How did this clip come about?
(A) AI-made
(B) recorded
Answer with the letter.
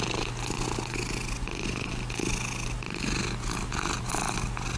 B